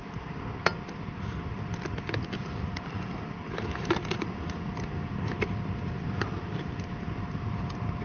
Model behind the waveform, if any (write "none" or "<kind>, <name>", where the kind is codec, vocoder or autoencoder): none